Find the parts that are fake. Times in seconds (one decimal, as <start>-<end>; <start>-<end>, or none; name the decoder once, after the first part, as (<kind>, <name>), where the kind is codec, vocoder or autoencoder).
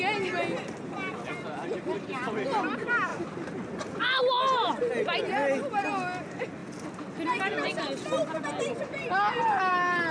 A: none